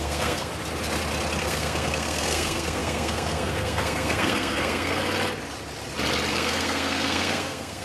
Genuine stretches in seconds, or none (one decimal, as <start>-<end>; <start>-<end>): 0.5-1.4; 5.0-6.3